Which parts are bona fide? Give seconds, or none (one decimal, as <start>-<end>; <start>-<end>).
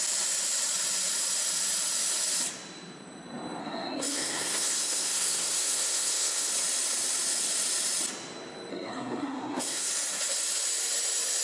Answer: 0.0-3.6; 6.5-8.7; 9.9-11.4